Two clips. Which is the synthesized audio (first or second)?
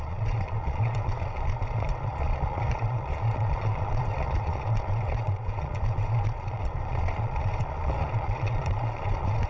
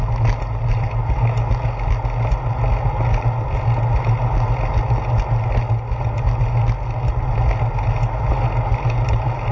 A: first